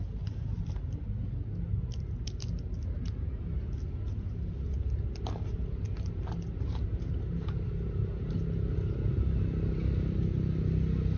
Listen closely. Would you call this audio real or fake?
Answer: real